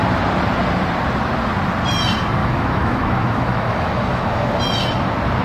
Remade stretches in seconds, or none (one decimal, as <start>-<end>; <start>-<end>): 2.4-4.6